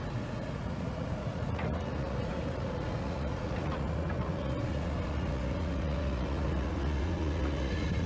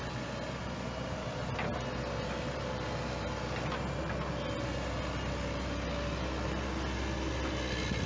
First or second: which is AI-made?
first